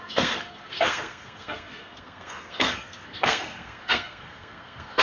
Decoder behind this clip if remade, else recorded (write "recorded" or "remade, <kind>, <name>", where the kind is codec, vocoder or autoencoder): remade, codec, SNAC